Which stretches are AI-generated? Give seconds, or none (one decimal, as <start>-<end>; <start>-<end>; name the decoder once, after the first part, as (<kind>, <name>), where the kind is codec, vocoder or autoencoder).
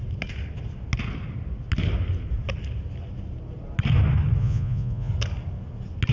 4.4-5.1 (vocoder, Vocos)